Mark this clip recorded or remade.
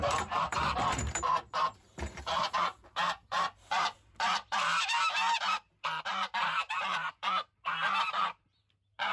remade